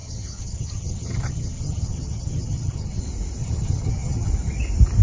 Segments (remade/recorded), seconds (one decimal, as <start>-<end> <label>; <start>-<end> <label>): 0.0-3.0 remade; 3.0-3.4 recorded; 3.4-4.3 remade; 4.3-5.0 recorded